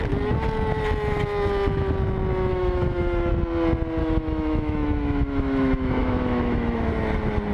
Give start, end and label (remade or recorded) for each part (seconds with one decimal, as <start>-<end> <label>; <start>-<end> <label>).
0.0-2.5 recorded; 2.5-3.3 remade; 3.3-4.0 recorded; 4.0-6.9 remade; 6.9-7.5 recorded